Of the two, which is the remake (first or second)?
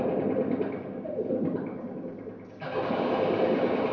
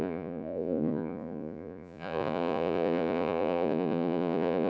second